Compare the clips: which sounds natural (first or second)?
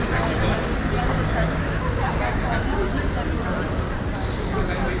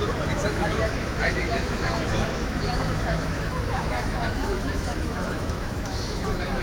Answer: first